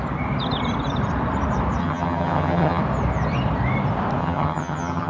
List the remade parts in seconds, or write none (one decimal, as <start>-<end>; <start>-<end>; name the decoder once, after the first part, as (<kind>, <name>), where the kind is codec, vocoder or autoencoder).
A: 1.8-2.8 (vocoder, HiFi-GAN); 4.2-5.1